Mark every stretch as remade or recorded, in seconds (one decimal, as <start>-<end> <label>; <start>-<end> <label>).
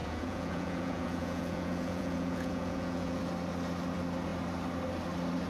0.0-3.2 remade; 3.2-5.5 recorded